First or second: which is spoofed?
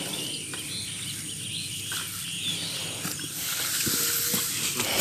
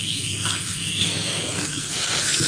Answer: second